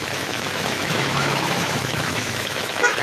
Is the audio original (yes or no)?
no